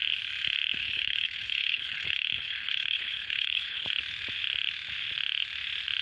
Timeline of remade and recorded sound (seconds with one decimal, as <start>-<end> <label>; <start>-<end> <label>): 0.0-0.8 recorded; 0.8-3.9 remade; 3.9-6.0 recorded